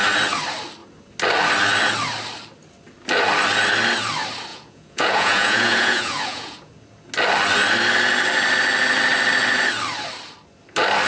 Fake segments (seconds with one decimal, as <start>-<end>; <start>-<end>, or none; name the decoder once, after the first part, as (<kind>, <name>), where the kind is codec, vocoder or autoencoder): 4.5-6.7 (vocoder, Vocos)